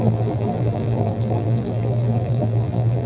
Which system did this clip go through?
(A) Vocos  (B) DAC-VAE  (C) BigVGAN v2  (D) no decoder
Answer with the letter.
C